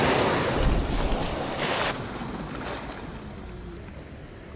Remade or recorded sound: recorded